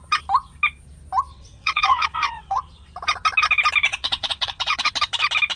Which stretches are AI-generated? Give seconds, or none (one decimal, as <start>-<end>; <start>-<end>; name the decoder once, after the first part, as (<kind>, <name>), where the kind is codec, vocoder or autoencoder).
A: 1.3-2.6 (vocoder, WaveNeXt); 3.9-4.9